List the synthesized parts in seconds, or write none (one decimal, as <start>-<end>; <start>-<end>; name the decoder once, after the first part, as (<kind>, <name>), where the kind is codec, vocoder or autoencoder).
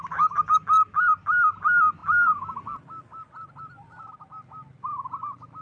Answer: none